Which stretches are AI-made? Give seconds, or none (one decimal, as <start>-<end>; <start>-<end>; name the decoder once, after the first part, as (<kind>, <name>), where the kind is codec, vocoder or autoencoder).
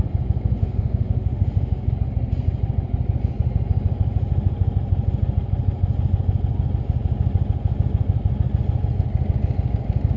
0.6-1.9 (autoencoder, DAC-VAE)